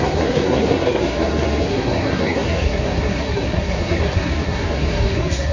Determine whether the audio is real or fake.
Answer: fake